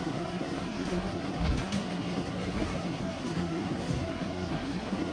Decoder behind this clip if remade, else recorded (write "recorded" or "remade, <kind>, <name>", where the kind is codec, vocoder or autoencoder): remade, codec, SNAC